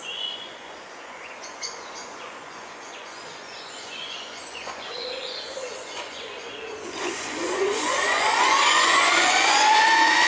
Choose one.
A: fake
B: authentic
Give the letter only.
A